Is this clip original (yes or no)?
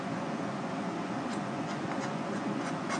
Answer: no